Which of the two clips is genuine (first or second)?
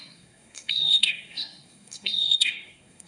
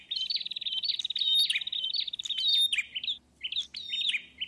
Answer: second